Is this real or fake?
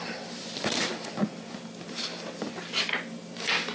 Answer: real